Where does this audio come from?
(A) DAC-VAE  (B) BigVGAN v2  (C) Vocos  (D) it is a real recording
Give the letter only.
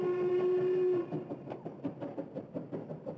D